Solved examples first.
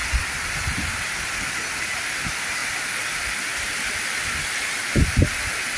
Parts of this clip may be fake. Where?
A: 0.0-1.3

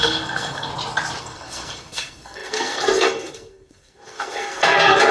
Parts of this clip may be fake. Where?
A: 0.0-0.7; 1.2-5.1

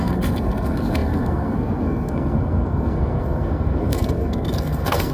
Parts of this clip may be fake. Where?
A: 0.0-5.1

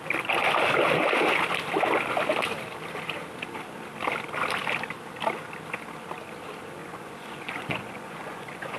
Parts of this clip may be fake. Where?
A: 6.8-8.8

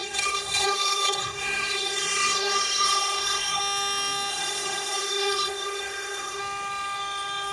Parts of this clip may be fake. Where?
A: 0.0-3.6; 4.3-6.4

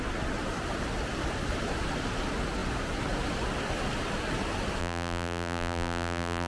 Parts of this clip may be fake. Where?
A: 4.8-6.5